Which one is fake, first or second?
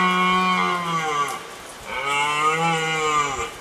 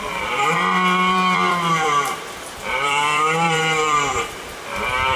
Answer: second